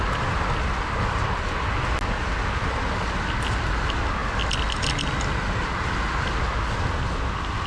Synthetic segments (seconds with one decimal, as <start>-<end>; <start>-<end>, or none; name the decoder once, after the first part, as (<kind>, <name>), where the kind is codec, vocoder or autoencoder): none